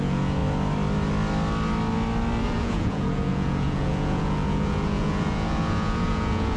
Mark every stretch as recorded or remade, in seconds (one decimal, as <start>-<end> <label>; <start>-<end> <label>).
0.0-0.4 remade; 0.4-2.4 recorded; 2.4-6.6 remade